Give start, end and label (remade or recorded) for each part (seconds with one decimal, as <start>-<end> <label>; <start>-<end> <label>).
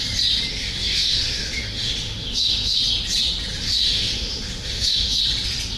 0.0-0.5 recorded; 0.5-2.8 remade; 2.8-3.6 recorded; 3.6-5.2 remade; 5.2-5.8 recorded